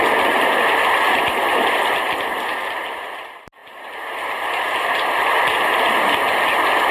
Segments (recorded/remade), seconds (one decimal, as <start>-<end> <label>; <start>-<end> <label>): 0.0-6.9 recorded